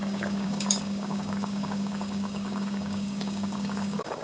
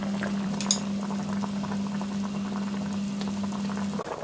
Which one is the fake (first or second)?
first